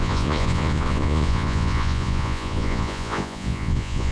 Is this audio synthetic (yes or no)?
yes